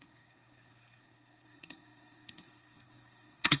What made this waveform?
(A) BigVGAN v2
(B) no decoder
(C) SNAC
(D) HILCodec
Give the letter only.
C